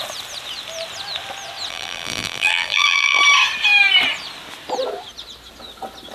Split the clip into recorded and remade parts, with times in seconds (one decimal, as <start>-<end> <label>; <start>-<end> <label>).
0.0-1.7 recorded; 1.7-3.2 remade; 3.2-6.1 recorded